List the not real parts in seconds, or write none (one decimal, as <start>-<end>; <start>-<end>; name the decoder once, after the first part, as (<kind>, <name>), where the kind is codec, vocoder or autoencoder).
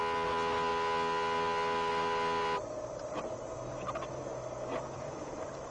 none